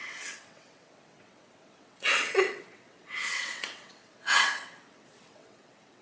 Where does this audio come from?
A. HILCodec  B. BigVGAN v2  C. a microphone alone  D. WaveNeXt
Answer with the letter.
D